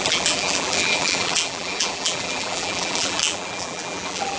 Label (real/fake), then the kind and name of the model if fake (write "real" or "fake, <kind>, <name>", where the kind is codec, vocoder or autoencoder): fake, vocoder, BigVGAN v2